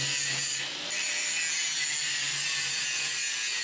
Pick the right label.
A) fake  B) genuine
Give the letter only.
B